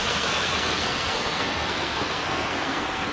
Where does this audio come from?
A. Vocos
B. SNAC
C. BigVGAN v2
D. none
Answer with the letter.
B